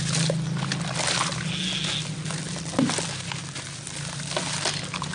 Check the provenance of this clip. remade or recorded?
recorded